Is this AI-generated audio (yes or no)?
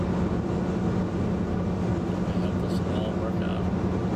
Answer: no